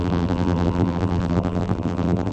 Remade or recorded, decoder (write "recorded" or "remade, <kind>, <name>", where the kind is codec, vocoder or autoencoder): remade, vocoder, BigVGAN v2